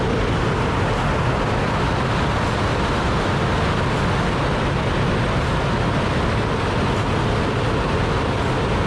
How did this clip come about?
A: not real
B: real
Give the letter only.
B